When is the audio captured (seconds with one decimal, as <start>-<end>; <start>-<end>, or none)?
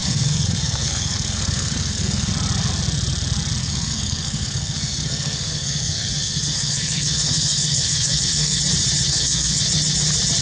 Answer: 2.3-3.6; 8.6-9.1; 9.6-10.4